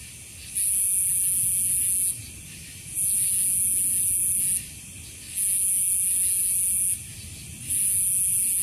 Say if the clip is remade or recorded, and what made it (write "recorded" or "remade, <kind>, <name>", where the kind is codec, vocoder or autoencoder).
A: recorded